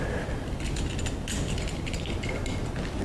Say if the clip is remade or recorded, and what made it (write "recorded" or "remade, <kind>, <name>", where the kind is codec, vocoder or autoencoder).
recorded